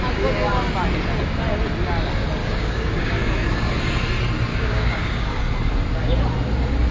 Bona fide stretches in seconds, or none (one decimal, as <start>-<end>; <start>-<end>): 0.0-2.4; 3.7-4.5; 5.4-6.9